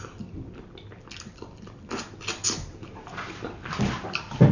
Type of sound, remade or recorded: recorded